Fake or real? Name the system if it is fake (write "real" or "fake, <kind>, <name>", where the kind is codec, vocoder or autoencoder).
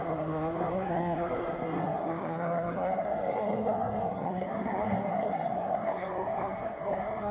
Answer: fake, codec, SNAC